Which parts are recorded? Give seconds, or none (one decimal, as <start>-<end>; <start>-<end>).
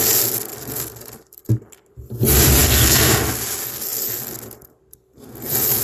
0.0-5.8